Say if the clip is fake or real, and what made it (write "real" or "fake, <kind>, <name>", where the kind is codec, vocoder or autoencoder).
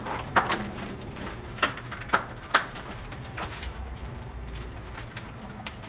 fake, vocoder, BigVGAN v2